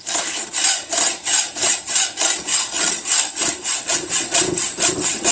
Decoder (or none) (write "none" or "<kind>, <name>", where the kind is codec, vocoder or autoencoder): none